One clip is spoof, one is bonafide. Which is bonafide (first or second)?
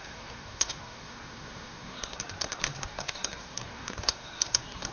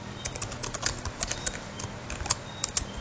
second